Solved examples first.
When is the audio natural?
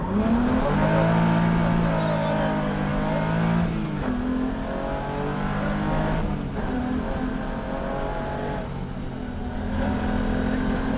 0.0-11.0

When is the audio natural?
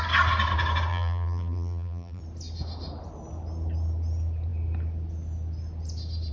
0.0-0.9; 2.2-6.3